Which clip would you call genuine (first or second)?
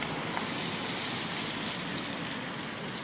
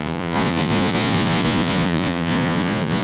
first